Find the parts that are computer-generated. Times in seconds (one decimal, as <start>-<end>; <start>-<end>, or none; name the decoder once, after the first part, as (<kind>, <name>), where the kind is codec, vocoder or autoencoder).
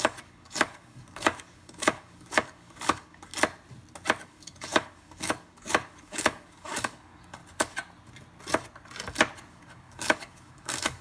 0.0-3.3 (codec, DAC); 4.2-7.4; 9.5-11.0